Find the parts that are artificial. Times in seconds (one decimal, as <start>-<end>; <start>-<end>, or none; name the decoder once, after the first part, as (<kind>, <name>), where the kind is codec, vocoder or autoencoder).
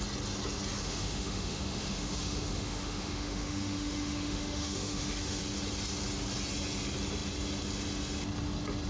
0.8-5.4 (autoencoder, DAC-VAE)